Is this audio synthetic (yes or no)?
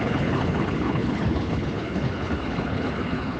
yes